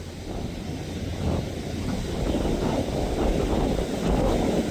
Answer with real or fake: real